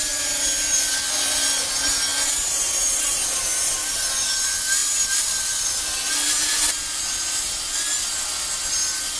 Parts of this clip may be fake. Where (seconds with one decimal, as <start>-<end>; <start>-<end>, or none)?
none